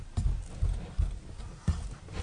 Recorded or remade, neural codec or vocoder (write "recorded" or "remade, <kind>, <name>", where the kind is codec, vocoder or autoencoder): recorded